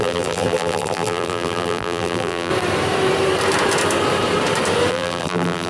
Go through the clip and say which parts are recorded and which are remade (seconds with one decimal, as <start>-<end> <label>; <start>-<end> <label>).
0.0-2.5 remade; 2.5-4.9 recorded; 4.9-5.7 remade